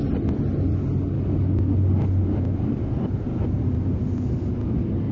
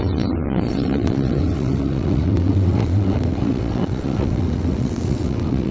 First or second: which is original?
first